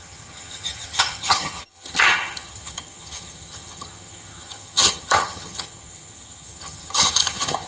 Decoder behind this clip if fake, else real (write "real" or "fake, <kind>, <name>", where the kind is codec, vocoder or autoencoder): fake, vocoder, HiFi-GAN